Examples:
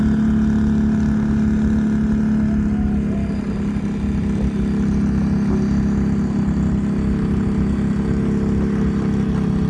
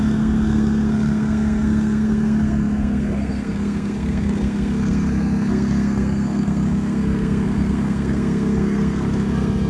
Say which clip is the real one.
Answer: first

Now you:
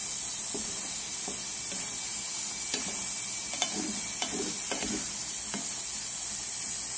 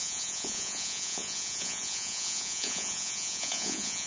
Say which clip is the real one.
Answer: first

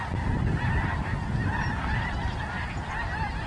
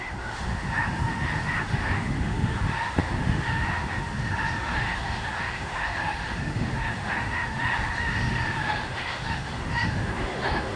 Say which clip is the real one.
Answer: first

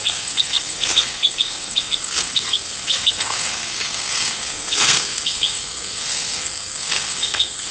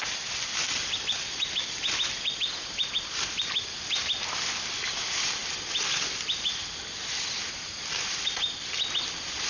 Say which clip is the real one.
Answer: second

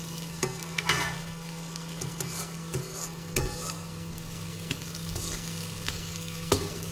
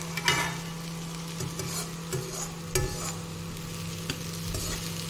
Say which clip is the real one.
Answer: second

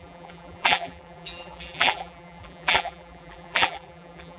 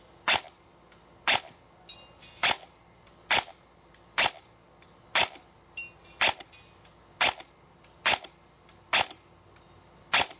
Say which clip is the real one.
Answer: second